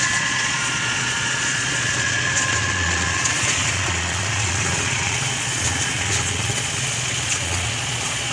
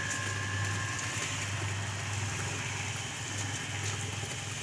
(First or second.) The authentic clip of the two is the second